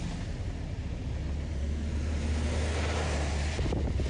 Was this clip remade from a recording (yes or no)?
no